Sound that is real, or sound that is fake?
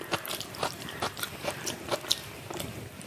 fake